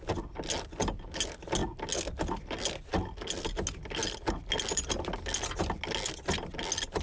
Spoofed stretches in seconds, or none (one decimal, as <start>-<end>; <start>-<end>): none